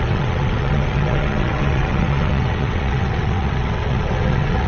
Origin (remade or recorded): remade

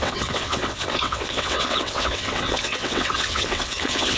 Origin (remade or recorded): remade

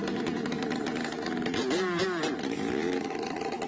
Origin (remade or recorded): recorded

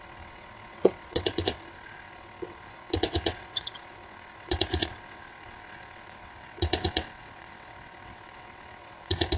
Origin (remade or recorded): remade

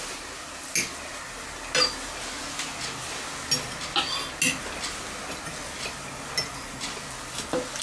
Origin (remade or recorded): recorded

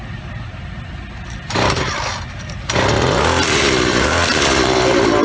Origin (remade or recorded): recorded